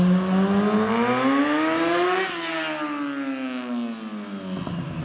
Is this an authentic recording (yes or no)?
yes